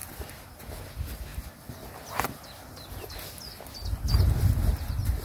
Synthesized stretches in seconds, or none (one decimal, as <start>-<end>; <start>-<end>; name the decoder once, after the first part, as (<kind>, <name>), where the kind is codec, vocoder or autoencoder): none